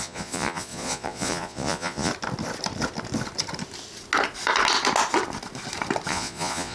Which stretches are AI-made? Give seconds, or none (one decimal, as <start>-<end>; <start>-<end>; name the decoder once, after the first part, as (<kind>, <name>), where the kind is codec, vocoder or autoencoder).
0.0-2.1 (vocoder, Vocos); 6.1-6.7